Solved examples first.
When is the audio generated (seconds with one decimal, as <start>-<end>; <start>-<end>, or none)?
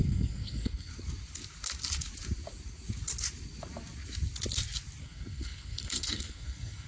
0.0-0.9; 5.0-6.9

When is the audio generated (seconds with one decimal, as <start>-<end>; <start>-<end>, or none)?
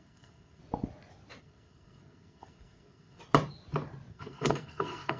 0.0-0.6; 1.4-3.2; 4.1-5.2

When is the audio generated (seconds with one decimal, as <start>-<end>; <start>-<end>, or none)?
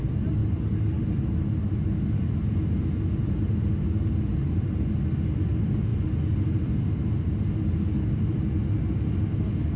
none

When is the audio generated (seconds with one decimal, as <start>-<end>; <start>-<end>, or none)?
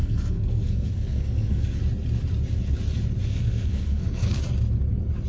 0.0-1.8; 3.3-4.4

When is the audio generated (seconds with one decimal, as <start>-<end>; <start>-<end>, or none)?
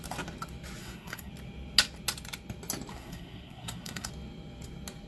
0.8-1.3; 2.9-4.1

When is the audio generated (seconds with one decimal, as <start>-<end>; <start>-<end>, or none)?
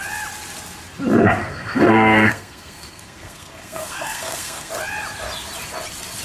1.4-4.7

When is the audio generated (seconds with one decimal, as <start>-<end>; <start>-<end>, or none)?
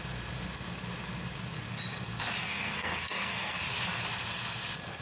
2.4-3.6